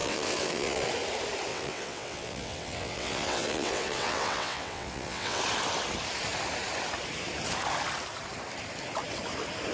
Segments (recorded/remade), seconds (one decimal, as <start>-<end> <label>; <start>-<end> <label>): 0.0-0.9 remade; 0.9-1.5 recorded; 1.5-5.4 remade; 5.4-9.7 recorded